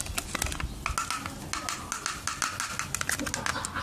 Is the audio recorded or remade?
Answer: recorded